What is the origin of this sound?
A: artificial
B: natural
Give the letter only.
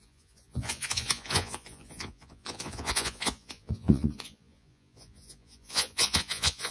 A